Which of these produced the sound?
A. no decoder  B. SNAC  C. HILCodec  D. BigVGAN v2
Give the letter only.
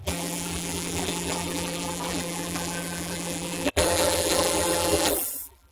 D